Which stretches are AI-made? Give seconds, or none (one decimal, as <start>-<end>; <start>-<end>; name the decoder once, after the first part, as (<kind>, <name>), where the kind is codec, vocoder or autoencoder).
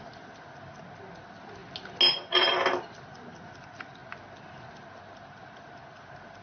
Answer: none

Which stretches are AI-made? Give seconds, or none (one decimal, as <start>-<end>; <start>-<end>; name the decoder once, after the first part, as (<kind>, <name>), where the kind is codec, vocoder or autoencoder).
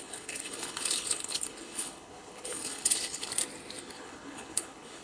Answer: 0.0-3.3 (codec, HILCodec); 3.8-5.0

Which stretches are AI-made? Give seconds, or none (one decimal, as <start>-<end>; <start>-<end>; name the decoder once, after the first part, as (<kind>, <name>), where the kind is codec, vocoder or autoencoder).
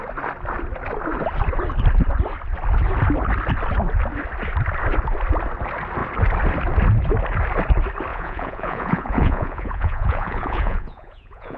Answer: 8.1-11.6 (vocoder, Vocos)